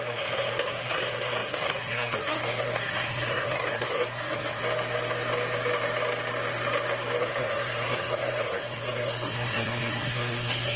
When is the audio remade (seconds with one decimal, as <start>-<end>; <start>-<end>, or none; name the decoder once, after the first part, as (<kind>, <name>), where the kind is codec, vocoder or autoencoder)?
0.0-4.6 (codec, SNAC); 7.2-10.8